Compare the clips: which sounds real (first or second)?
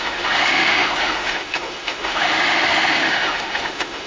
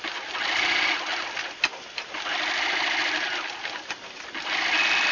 second